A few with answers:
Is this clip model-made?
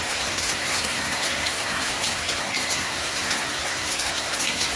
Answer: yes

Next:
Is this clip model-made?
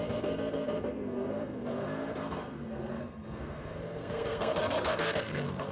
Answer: yes